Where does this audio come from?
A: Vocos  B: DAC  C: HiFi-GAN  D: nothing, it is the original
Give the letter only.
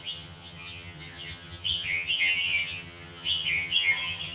C